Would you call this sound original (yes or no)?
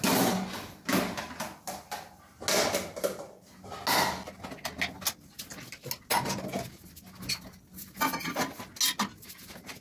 yes